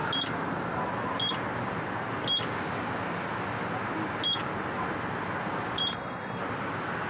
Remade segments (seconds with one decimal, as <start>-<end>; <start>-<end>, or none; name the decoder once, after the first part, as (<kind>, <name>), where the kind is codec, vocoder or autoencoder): 5.9-6.4 (codec, SNAC)